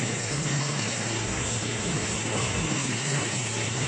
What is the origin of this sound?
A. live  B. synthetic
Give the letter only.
B